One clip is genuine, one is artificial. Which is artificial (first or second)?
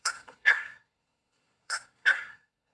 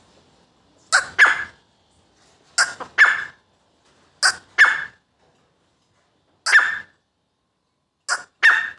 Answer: first